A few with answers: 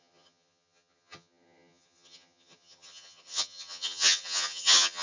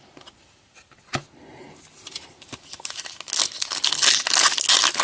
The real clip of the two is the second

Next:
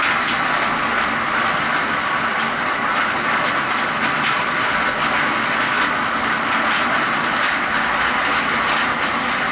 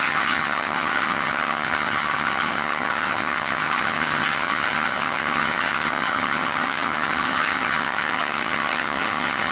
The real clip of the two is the first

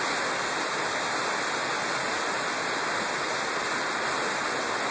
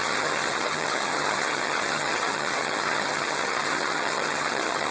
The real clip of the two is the first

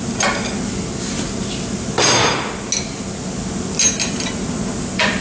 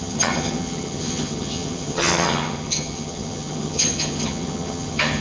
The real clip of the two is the first